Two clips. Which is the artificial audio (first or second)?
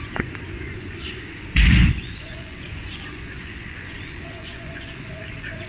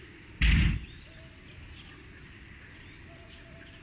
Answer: first